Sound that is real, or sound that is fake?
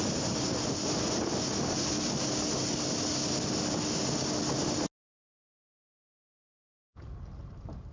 real